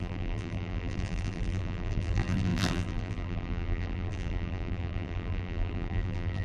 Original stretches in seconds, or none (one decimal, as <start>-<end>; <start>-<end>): none